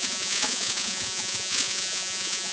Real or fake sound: fake